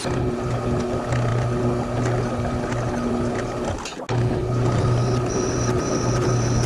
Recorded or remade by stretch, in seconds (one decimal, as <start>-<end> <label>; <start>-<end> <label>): 0.0-6.7 recorded